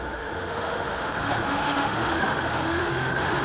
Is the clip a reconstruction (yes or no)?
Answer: yes